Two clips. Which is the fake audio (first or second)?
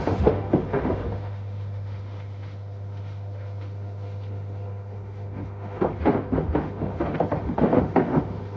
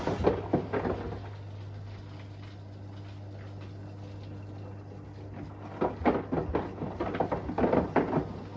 first